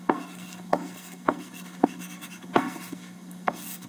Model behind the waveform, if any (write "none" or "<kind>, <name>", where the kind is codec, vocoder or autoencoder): codec, SNAC